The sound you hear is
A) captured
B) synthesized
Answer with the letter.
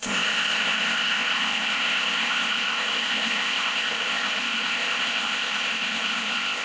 B